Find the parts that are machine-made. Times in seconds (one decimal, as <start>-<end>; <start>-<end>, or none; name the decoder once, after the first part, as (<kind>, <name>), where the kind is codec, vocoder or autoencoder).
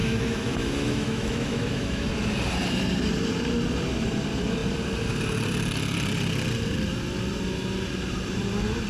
0.0-2.1 (autoencoder, DAC-VAE)